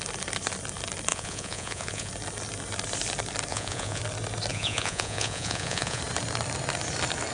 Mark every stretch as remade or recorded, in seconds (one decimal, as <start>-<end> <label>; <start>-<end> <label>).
0.0-1.1 recorded; 1.1-2.1 remade; 2.1-3.5 recorded; 3.5-4.0 remade; 4.0-4.5 recorded; 4.5-6.0 remade; 6.0-7.3 recorded